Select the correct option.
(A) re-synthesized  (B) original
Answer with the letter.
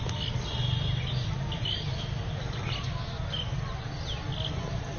B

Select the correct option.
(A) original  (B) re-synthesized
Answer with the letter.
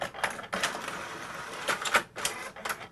A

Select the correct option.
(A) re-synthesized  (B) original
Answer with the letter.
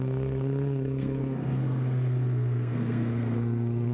A